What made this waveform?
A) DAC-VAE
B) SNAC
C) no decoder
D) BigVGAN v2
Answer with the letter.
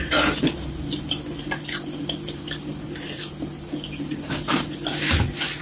C